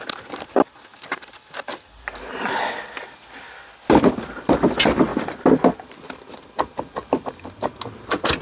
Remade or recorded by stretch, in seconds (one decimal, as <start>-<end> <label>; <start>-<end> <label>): 0.0-8.4 recorded